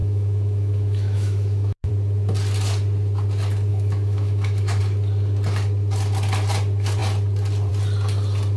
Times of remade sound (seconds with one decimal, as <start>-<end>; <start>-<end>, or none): 0.0-1.9; 3.7-4.8